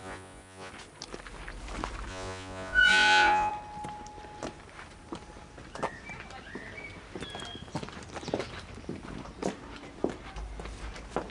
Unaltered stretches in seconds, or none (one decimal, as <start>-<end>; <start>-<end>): 0.7-2.1; 3.5-11.3